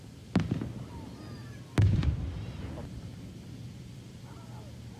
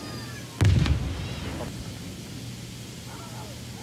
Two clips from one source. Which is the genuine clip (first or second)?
second